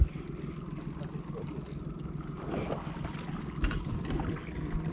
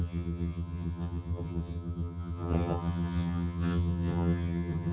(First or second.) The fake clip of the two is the second